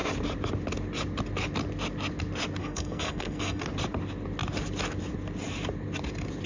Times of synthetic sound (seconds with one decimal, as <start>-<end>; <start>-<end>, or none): 2.6-3.6